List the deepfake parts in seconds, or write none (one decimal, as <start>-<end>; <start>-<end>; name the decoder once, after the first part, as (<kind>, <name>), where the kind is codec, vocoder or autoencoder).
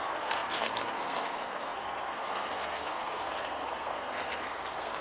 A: 0.0-5.0 (codec, SNAC)